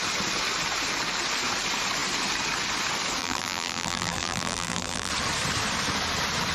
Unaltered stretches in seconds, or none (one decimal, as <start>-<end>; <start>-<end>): 0.0-3.2; 5.1-6.5